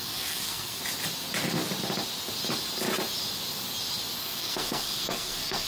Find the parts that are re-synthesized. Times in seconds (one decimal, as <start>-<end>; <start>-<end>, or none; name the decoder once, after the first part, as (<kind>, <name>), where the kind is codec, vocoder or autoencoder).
0.0-0.8 (codec, SNAC); 4.2-5.7